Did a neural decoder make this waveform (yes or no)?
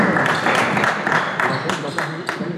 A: yes